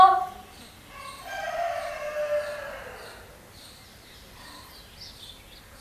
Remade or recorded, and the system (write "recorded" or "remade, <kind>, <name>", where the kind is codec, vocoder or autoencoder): recorded